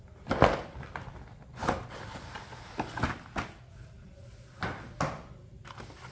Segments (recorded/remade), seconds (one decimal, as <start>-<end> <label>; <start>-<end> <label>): 0.0-1.6 recorded; 1.6-2.4 remade; 2.4-6.1 recorded